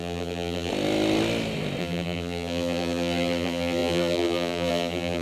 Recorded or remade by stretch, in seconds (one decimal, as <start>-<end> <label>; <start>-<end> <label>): 0.0-0.7 remade; 0.7-1.8 recorded; 1.8-5.2 remade